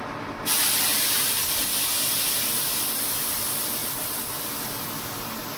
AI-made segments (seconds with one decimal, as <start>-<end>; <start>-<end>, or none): 0.9-1.8